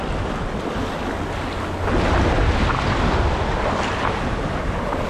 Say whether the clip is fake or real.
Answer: real